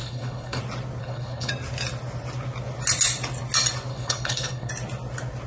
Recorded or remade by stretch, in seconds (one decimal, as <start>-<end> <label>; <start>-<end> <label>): 0.0-0.6 remade; 0.6-1.0 recorded; 1.0-1.5 remade; 1.5-3.9 recorded; 3.9-4.7 remade; 4.7-5.5 recorded

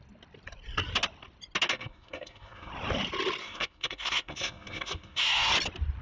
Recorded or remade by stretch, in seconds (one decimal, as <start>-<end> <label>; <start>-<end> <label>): 0.0-1.7 recorded; 1.7-2.7 remade; 2.7-3.4 recorded; 3.4-5.5 remade; 5.5-6.0 recorded

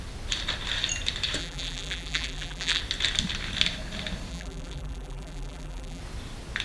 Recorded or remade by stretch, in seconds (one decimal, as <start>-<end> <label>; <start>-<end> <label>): 0.0-1.4 recorded; 1.4-2.8 remade; 2.8-4.3 recorded; 4.3-6.0 remade; 6.0-6.6 recorded

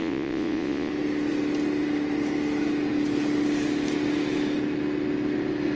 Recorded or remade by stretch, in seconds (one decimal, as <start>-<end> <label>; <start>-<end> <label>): 0.0-0.9 remade; 0.9-5.8 recorded